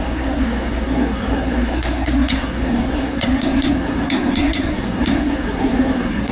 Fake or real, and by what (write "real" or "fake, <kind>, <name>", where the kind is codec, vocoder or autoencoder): fake, codec, SNAC